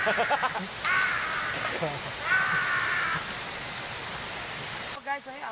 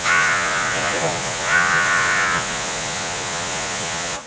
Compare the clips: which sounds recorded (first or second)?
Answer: first